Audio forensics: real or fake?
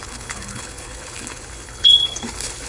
fake